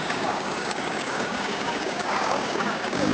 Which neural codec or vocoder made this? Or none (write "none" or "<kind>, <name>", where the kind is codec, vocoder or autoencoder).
codec, DAC